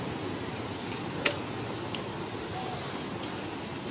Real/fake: real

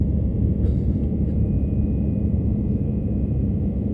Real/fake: fake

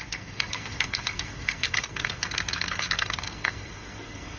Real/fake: fake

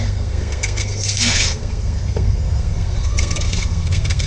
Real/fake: fake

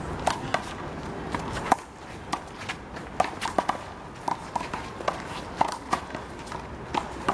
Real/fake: real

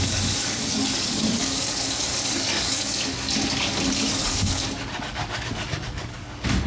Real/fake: fake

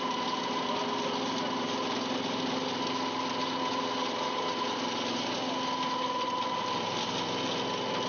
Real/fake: real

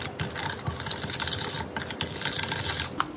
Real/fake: real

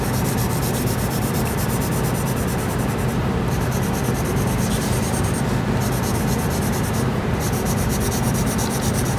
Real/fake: fake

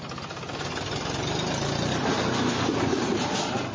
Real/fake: real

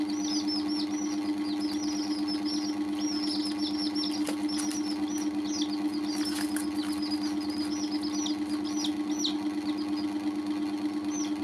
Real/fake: real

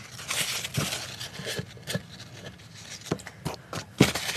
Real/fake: real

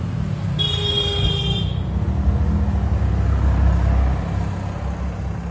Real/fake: real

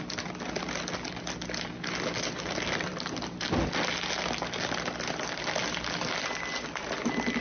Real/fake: real